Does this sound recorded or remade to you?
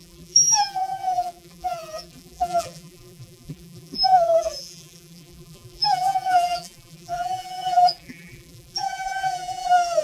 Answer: remade